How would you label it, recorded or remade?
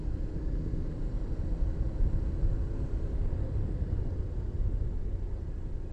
recorded